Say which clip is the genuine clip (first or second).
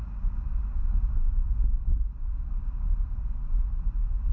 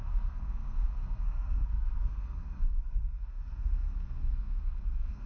first